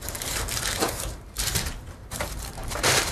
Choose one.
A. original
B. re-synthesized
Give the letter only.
B